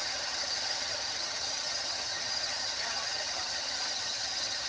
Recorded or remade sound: remade